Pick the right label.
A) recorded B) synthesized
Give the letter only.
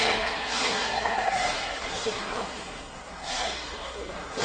B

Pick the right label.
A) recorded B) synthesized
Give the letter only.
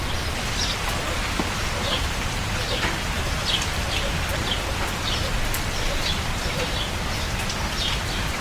A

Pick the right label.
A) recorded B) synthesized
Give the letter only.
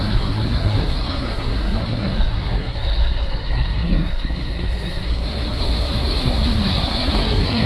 B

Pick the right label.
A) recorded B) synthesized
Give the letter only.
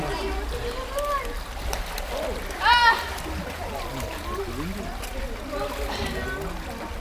A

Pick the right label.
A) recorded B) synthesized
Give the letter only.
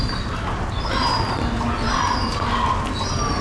A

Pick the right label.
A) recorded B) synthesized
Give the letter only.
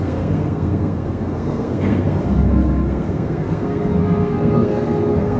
B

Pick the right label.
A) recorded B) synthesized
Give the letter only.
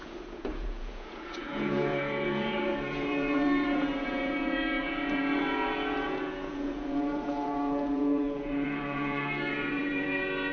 B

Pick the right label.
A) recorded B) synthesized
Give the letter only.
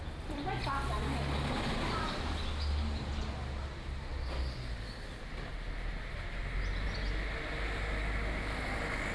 A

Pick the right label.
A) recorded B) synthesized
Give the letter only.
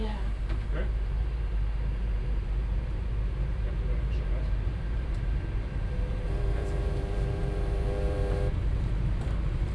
B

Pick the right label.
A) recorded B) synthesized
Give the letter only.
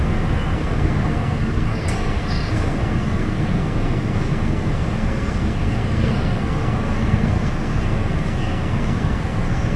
B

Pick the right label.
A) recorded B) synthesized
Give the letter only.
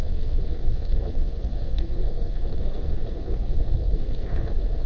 B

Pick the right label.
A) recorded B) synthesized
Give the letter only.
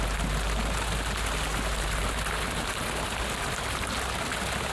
A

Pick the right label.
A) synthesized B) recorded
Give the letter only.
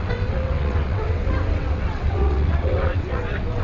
A